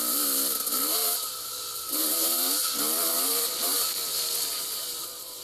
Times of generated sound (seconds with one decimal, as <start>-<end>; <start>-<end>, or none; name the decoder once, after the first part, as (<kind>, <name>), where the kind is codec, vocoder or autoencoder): none